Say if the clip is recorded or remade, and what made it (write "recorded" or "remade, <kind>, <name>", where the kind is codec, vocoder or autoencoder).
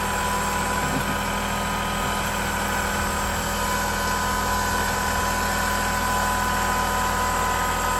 recorded